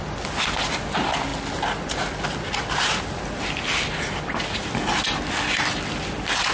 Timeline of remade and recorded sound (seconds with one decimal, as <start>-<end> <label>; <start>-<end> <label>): 0.0-6.5 recorded